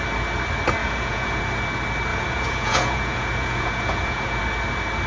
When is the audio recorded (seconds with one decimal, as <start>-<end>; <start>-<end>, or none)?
0.0-0.8; 1.4-2.1; 4.4-5.1